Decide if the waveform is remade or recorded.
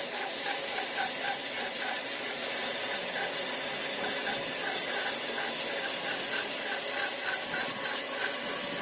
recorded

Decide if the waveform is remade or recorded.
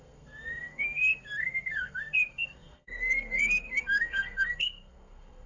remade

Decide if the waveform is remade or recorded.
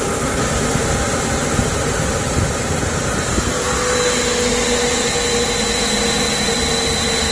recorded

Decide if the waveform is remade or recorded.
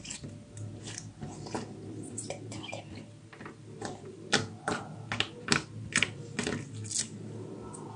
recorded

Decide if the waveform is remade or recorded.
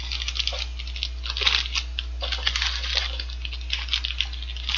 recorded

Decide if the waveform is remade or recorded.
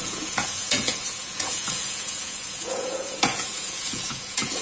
remade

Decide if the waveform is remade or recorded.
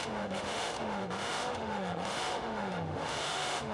remade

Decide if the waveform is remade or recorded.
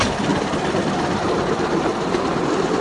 remade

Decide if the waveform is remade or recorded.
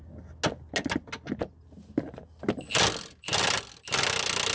recorded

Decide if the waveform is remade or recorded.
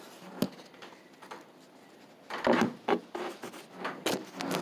recorded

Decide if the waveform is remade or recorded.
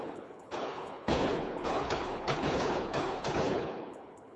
remade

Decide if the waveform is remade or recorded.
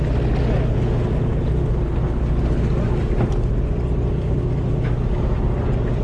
recorded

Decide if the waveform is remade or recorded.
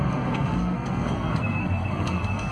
remade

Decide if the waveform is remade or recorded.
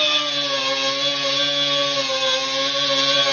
recorded